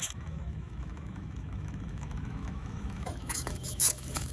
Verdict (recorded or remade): remade